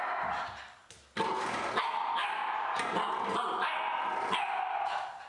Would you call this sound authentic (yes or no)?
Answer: yes